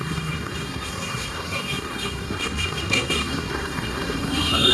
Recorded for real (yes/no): no